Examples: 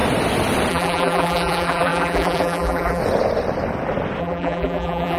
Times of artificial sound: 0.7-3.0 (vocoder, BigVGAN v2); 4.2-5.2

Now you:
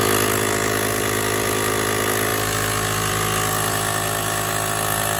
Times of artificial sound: none

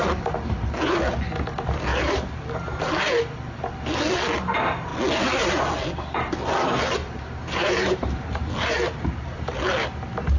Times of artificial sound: 1.9-2.8 (vocoder, BigVGAN v2); 7.0-8.5

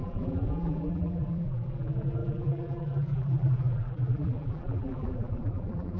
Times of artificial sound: 0.0-6.0 (vocoder, BigVGAN v2)